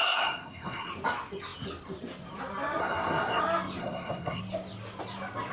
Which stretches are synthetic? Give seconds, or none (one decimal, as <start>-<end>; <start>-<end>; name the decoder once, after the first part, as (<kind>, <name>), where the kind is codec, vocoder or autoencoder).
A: 0.0-0.9 (codec, SNAC); 2.8-3.4; 3.8-4.4